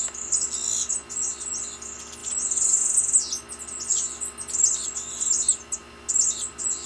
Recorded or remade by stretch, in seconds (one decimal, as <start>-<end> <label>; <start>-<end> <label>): 0.0-6.9 recorded